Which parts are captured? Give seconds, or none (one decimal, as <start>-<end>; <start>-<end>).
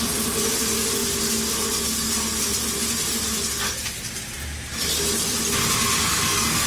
0.0-6.0